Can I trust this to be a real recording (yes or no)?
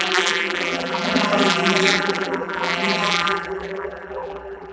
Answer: no